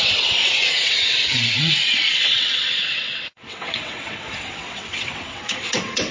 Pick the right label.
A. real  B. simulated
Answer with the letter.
B